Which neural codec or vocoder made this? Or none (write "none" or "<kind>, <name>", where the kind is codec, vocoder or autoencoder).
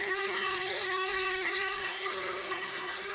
codec, SNAC